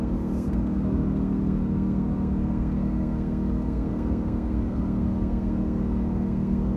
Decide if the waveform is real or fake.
fake